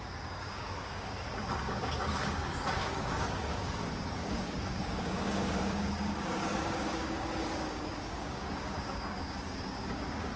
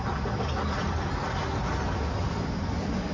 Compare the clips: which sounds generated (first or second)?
first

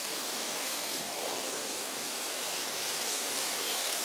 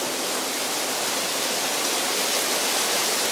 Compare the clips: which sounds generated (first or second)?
first